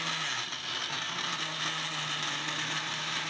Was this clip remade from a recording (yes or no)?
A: no